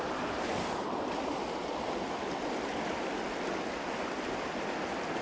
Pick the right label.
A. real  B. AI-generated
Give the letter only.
A